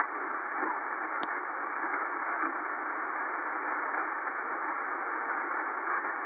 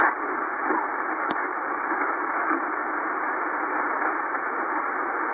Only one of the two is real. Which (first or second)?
first